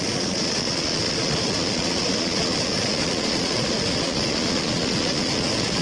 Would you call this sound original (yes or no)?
no